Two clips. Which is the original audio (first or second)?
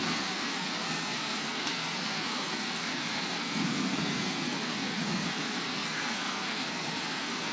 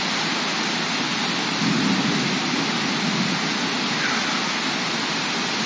second